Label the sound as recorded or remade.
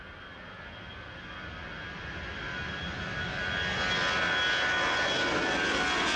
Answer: recorded